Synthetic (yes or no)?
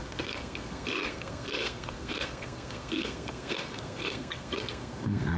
yes